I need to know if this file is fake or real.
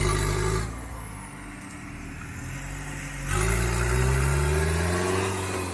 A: real